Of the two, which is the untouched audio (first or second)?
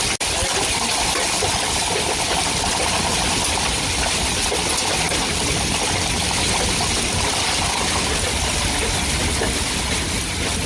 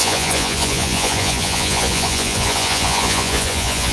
first